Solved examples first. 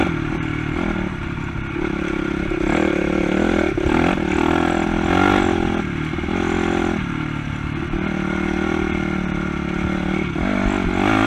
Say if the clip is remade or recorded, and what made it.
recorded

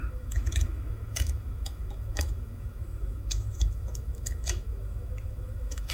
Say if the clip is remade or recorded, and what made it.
remade, autoencoder, DAC-VAE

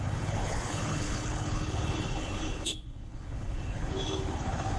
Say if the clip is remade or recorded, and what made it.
remade, codec, HILCodec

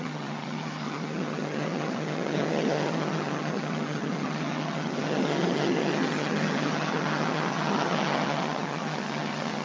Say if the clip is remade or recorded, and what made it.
remade, vocoder, HiFi-GAN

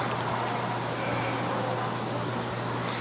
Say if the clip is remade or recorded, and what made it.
recorded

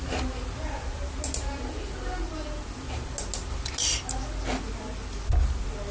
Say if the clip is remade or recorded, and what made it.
recorded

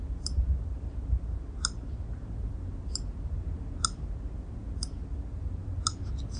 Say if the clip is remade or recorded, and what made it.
recorded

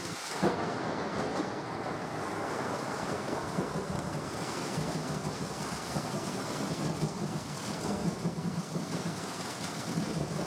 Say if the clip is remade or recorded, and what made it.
remade, codec, SNAC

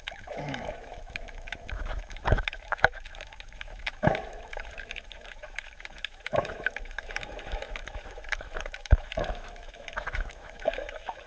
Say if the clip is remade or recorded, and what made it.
remade, autoencoder, DAC-VAE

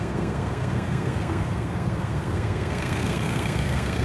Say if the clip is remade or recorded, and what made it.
remade, codec, SNAC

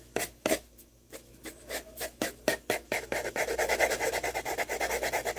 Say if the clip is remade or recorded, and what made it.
remade, autoencoder, DAC-VAE